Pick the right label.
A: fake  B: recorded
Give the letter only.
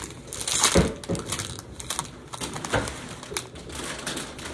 B